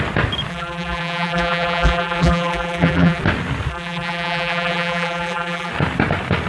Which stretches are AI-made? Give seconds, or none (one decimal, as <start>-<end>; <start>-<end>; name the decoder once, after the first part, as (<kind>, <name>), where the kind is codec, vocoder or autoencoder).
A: 0.5-3.2 (vocoder, BigVGAN v2); 3.7-5.7